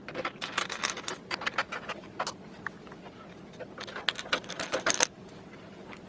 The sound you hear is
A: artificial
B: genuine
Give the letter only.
B